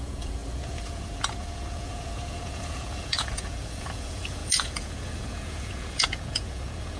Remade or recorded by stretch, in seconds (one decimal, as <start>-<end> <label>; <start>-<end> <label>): 0.0-7.0 remade